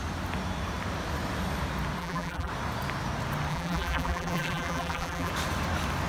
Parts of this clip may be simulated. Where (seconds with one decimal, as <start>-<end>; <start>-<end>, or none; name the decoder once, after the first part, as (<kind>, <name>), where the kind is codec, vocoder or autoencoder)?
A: 2.0-2.5 (vocoder, BigVGAN v2); 3.5-5.3